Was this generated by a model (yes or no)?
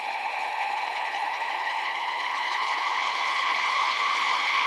yes